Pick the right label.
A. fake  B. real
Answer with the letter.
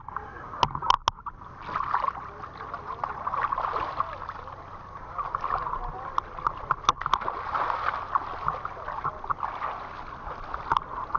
B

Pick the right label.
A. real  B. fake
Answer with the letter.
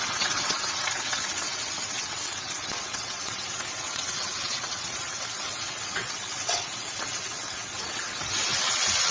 B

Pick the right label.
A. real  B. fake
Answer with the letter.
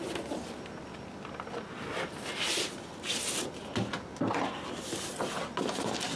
A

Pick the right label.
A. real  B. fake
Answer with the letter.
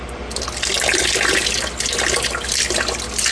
A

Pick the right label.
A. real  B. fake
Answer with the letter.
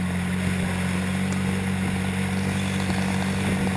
A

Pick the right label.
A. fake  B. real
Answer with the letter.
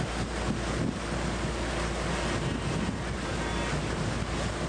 B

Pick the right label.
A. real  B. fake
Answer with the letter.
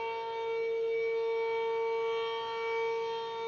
A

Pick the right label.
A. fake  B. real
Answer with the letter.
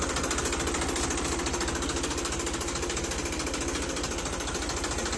B